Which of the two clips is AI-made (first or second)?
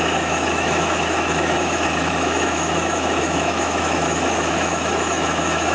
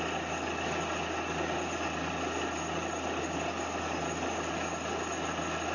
first